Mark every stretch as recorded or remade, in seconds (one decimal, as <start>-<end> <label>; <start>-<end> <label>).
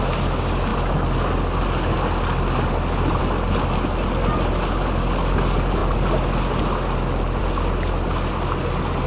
0.0-9.1 recorded